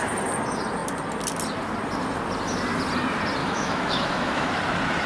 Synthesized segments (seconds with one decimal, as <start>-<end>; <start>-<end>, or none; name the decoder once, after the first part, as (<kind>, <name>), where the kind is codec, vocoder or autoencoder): 3.4-4.5 (autoencoder, DAC-VAE)